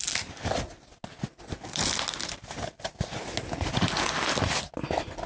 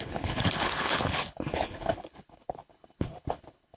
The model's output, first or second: second